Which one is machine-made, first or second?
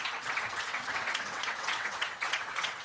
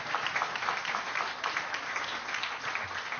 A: first